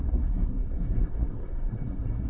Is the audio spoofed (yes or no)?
yes